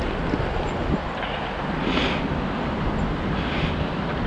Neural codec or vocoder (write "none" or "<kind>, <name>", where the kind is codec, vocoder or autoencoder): none